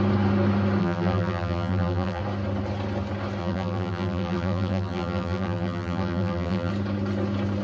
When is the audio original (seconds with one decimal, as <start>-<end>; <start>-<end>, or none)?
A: 0.0-0.8; 2.2-3.4; 6.7-7.6